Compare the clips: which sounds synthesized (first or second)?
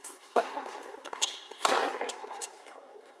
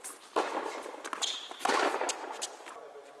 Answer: first